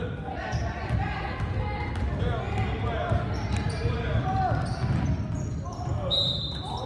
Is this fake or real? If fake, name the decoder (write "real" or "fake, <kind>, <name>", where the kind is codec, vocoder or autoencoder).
real